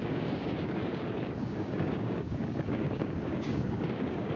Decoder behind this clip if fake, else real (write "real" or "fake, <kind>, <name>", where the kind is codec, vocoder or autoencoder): fake, codec, DAC